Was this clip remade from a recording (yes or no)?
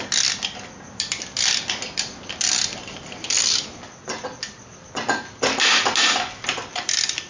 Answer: no